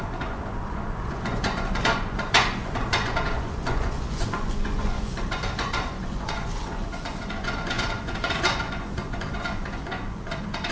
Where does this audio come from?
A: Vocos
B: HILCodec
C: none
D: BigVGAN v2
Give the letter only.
A